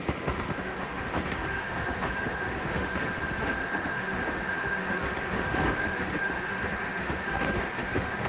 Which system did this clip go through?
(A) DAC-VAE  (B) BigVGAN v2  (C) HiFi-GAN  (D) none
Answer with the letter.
A